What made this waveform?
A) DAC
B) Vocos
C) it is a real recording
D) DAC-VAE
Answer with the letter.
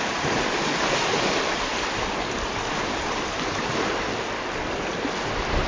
C